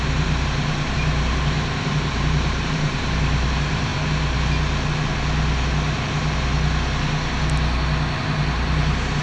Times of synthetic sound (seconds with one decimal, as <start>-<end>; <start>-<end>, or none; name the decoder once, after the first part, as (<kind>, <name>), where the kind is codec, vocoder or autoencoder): 0.0-3.9 (vocoder, BigVGAN v2); 8.2-9.2